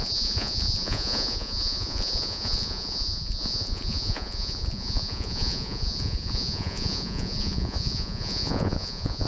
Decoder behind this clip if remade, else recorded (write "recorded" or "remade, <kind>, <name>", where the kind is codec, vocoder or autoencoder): remade, vocoder, Vocos